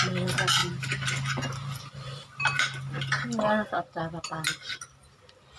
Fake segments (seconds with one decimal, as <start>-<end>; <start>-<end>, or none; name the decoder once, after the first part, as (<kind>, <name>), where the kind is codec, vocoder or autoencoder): none